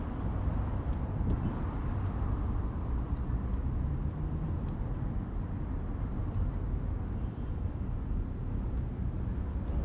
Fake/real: real